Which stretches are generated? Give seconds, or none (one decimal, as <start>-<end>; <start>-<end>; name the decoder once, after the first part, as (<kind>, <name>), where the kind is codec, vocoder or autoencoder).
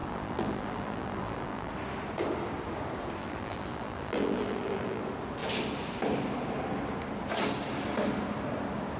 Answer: 0.0-1.7 (vocoder, BigVGAN v2); 3.2-5.0